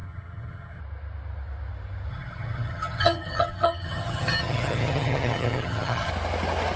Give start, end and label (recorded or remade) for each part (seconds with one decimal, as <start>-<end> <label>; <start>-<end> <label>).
0.0-0.8 remade; 0.8-2.1 recorded; 2.1-6.1 remade; 6.1-6.8 recorded